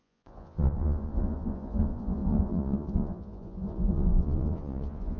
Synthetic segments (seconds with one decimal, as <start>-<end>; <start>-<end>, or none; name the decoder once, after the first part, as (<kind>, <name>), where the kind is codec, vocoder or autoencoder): 0.0-5.2 (vocoder, Vocos)